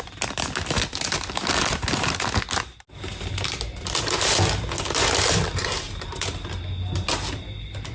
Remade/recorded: recorded